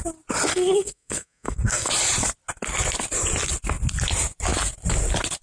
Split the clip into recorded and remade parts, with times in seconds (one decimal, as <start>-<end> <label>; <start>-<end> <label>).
0.0-0.5 recorded; 0.5-1.9 remade; 1.9-5.4 recorded